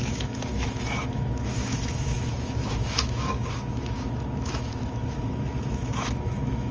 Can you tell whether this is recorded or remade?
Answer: remade